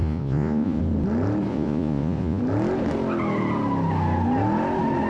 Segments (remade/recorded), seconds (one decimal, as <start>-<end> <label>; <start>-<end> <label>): 0.0-0.8 remade; 0.8-1.5 recorded; 1.5-2.4 remade; 2.4-5.1 recorded